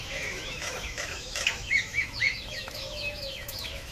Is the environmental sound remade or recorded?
remade